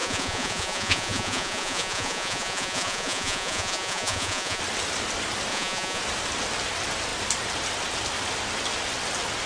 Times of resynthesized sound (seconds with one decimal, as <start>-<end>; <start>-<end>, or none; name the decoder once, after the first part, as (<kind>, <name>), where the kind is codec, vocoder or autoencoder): 0.0-4.6 (vocoder, Vocos); 5.5-6.0